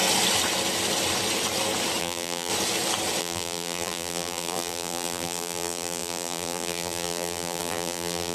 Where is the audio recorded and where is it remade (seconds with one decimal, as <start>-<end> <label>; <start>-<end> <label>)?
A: 0.0-2.0 recorded; 2.0-2.5 remade; 2.5-3.2 recorded; 3.2-8.3 remade